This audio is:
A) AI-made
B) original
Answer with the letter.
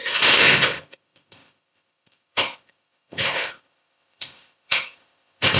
A